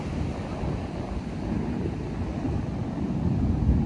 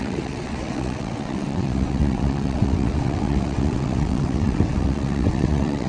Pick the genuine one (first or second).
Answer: first